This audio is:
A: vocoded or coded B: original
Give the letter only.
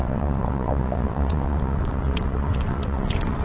A